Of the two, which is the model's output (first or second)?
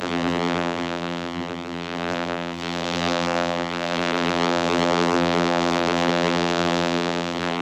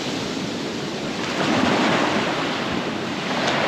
first